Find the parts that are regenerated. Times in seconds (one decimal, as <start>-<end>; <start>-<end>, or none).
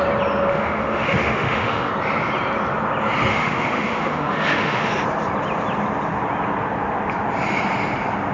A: 0.5-1.9; 3.3-4.9